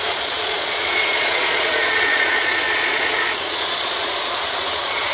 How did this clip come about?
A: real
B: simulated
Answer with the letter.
B